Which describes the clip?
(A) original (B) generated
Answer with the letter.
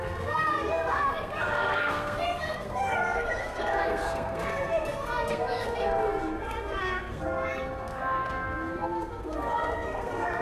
B